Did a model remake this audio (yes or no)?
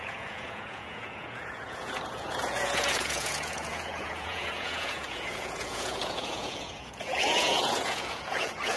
yes